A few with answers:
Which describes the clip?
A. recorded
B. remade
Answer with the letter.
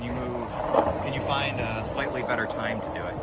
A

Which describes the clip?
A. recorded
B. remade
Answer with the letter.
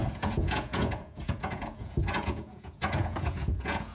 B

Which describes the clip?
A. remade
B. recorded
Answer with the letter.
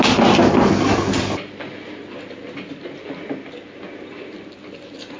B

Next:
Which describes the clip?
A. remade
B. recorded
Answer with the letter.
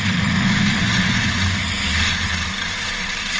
B